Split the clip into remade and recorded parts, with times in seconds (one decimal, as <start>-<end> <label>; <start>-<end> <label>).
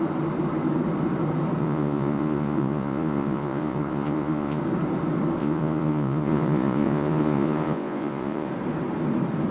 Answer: 0.0-1.6 recorded; 1.6-4.6 remade; 4.6-5.4 recorded; 5.4-8.5 remade; 8.5-9.5 recorded